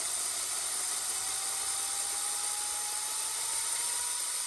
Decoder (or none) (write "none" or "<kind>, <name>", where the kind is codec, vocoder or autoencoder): none